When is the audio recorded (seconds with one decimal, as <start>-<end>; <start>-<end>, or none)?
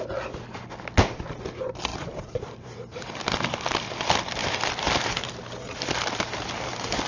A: 0.0-1.9; 3.5-4.4; 6.2-7.1